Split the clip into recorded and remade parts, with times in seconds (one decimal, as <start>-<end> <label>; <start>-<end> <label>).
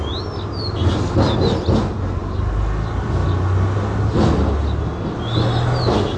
0.0-6.2 recorded